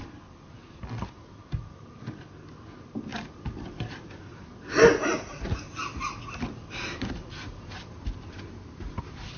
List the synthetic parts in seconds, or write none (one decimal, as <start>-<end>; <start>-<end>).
none